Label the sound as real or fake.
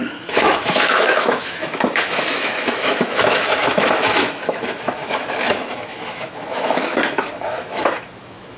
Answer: fake